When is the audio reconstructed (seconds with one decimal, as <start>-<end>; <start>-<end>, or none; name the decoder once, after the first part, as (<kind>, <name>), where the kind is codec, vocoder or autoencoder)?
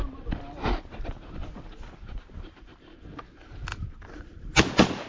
3.7-4.6 (vocoder, BigVGAN v2)